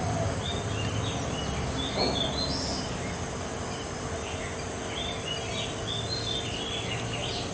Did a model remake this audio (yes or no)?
no